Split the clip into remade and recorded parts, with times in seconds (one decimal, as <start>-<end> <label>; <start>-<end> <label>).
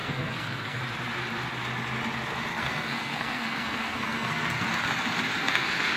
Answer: 0.0-0.8 remade; 0.8-2.5 recorded; 2.5-4.7 remade; 4.7-5.4 recorded; 5.4-6.0 remade